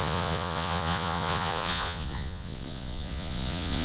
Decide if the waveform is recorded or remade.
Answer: remade